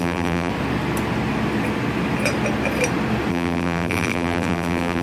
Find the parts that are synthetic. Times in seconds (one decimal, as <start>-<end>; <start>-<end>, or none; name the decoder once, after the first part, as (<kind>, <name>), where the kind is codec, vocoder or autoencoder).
0.0-0.5 (vocoder, BigVGAN v2); 3.3-5.0